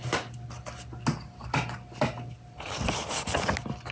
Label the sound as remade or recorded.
recorded